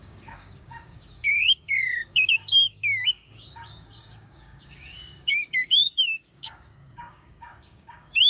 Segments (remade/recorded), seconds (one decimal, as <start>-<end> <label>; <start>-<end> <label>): 0.0-8.3 remade